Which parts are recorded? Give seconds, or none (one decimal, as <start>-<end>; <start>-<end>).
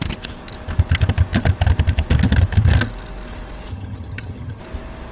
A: 0.0-3.7; 4.6-5.1